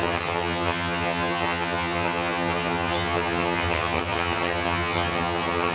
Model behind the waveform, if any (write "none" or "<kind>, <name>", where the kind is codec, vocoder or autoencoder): vocoder, HiFi-GAN